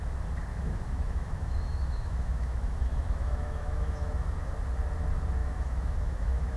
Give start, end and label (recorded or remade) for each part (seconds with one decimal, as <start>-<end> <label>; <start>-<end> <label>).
0.0-0.5 recorded; 0.5-4.5 remade; 4.5-5.4 recorded; 5.4-6.6 remade

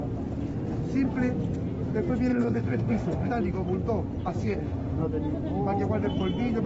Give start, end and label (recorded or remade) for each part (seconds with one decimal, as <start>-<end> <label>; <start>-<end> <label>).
0.0-2.3 recorded; 2.3-3.3 remade; 3.3-4.4 recorded; 4.4-5.0 remade; 5.0-6.7 recorded

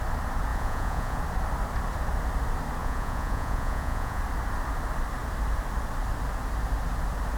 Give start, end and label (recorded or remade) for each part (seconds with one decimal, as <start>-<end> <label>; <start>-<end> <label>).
0.0-0.5 recorded; 0.5-1.2 remade; 1.2-2.8 recorded; 2.8-4.2 remade; 4.2-7.4 recorded

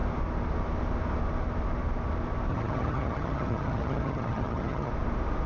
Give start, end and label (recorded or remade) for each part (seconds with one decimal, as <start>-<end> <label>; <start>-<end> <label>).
0.0-2.5 recorded; 2.5-4.9 remade; 4.9-5.5 recorded

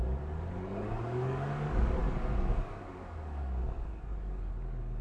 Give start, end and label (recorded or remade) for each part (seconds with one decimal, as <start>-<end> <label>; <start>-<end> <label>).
0.0-5.0 remade